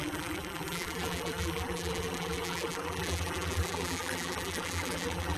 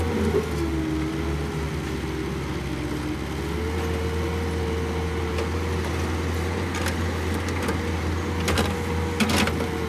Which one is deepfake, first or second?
first